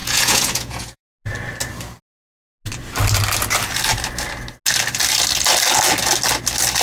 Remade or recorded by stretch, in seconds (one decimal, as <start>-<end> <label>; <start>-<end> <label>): 0.0-1.0 remade; 1.0-6.8 recorded